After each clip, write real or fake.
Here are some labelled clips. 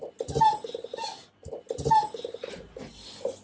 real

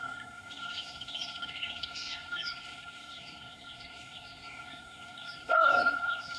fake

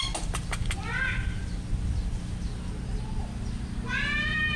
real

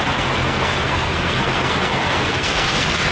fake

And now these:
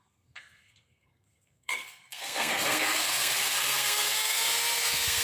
fake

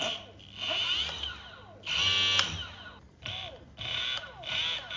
real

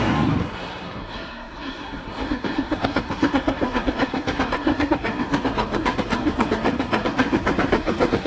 fake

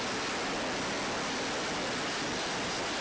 real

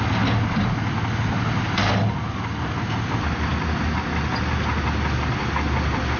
real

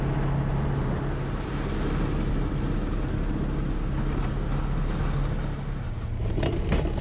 real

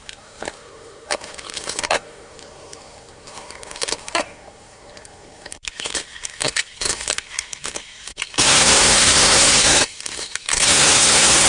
fake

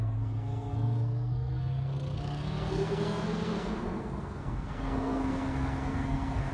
fake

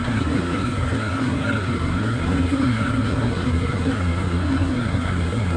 fake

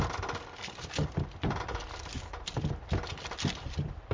real